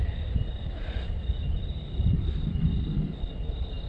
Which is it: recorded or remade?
recorded